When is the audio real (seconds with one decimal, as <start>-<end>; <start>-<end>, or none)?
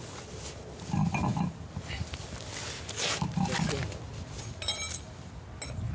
0.0-5.9